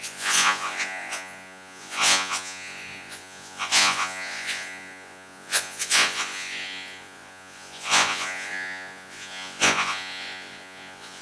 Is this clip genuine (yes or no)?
no